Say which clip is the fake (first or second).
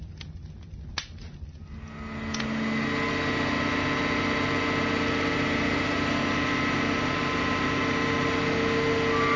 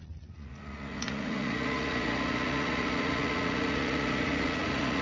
second